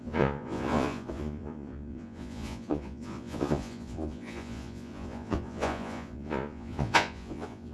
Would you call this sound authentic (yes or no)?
no